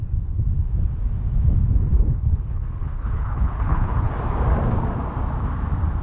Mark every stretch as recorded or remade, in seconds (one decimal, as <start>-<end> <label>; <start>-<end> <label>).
0.0-1.9 recorded; 1.9-4.1 remade; 4.1-6.0 recorded